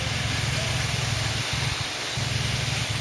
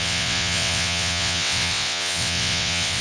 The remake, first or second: second